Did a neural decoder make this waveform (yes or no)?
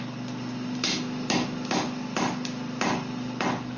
no